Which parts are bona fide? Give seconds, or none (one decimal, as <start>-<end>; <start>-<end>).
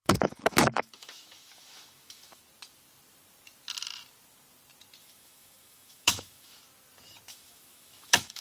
2.4-5.0; 6.6-7.3